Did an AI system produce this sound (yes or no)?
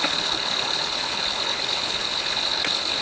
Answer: yes